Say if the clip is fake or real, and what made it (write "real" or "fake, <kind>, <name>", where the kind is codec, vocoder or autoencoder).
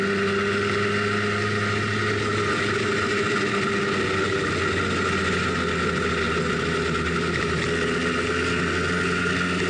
real